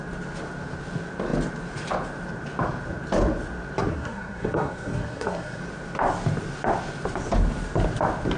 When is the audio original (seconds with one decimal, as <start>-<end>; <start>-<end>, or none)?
0.0-3.9; 5.6-8.4